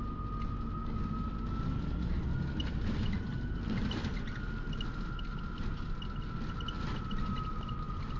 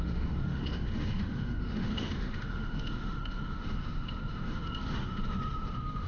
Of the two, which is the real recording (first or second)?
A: first